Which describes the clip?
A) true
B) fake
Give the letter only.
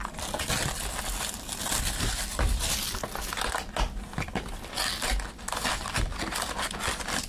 A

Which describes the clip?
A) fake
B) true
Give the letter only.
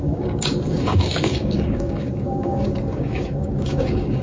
A